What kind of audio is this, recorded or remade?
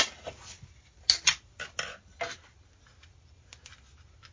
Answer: recorded